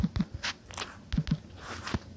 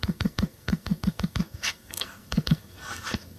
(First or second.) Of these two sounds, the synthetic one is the second